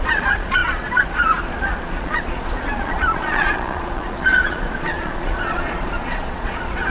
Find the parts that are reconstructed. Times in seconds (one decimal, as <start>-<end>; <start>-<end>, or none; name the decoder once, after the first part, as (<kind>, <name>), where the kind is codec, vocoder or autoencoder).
0.0-6.9 (vocoder, Vocos)